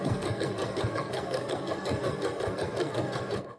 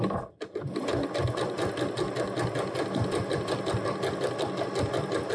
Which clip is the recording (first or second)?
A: second